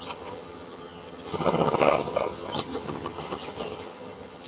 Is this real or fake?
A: fake